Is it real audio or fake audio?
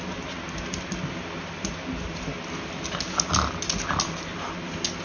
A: real